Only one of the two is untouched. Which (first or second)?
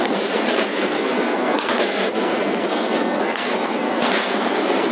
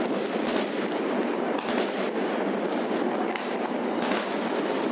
second